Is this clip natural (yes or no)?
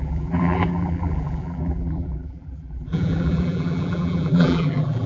no